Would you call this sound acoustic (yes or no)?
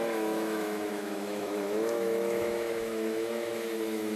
no